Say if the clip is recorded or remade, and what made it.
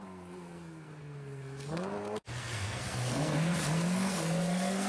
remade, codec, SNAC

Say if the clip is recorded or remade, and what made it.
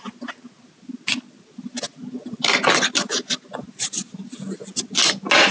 recorded